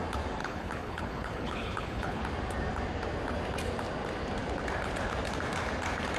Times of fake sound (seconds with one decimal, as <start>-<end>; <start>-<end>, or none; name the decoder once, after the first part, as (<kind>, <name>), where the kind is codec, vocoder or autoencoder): 0.4-2.2 (codec, HILCodec)